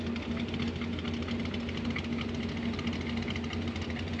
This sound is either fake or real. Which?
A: real